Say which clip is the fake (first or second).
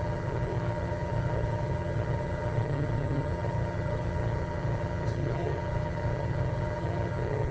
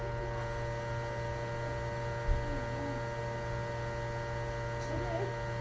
first